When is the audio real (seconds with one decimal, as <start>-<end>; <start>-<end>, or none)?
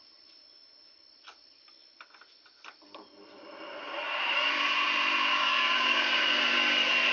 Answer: 0.0-5.3; 6.2-7.1